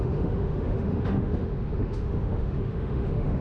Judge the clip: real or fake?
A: fake